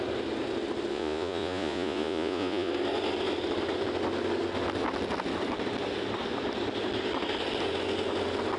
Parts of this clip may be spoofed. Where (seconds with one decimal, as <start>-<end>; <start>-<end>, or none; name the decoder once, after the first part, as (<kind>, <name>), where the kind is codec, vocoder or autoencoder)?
0.9-2.7 (vocoder, Vocos)

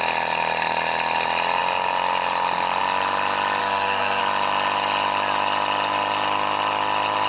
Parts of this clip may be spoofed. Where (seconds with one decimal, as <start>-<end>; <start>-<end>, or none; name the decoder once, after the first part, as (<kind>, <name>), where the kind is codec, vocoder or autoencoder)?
3.6-4.2 (codec, SNAC)

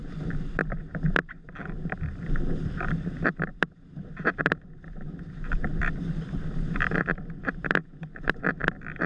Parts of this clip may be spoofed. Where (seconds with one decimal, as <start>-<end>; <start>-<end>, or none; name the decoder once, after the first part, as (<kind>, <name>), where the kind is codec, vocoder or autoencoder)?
0.0-7.8 (vocoder, BigVGAN v2); 8.4-9.1

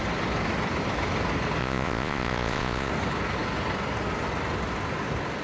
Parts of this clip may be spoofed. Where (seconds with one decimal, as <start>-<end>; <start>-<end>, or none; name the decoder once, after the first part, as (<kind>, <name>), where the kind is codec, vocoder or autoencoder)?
1.6-2.9 (vocoder, Vocos)

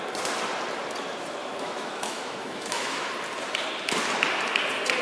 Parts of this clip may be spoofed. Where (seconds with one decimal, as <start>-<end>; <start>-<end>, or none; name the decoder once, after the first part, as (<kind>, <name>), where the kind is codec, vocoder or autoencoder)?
1.4-3.1 (autoencoder, DAC-VAE)